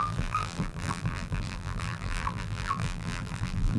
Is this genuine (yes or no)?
no